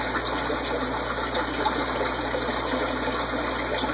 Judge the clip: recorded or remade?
recorded